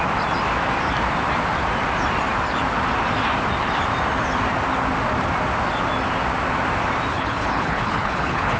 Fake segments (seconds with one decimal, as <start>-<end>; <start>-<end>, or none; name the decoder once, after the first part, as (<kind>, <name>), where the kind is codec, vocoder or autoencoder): 7.1-8.6 (codec, HILCodec)